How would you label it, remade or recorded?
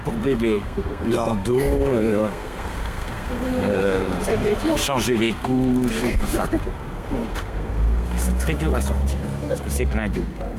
remade